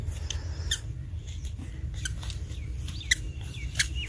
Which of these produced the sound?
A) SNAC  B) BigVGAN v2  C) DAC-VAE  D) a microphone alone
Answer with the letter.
D